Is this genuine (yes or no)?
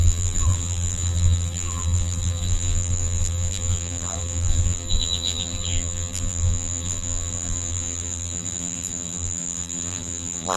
no